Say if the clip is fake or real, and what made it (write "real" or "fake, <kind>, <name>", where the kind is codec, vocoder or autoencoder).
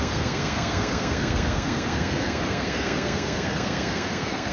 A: fake, codec, SNAC